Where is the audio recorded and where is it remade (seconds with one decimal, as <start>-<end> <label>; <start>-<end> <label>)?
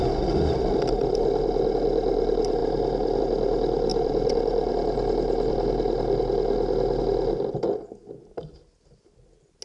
0.0-3.9 recorded; 3.9-7.0 remade; 7.0-9.6 recorded